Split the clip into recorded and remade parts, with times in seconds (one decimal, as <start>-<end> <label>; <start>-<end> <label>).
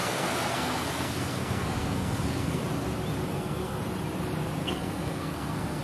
0.0-2.6 remade; 2.6-3.3 recorded; 3.3-3.8 remade; 3.8-4.6 recorded; 4.6-5.8 remade